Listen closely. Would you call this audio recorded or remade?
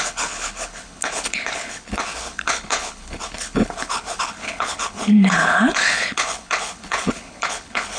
remade